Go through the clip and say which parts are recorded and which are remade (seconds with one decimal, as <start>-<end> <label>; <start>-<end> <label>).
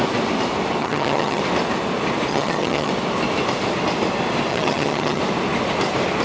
0.0-0.8 recorded; 0.8-1.4 remade; 1.4-2.3 recorded; 2.3-2.9 remade; 2.9-4.5 recorded; 4.5-5.2 remade; 5.2-6.2 recorded